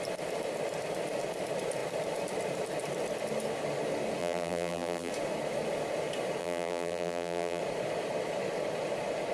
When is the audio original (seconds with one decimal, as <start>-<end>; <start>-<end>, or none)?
0.0-4.2; 5.1-6.4; 7.6-9.3